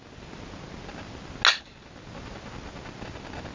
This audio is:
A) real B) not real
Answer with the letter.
A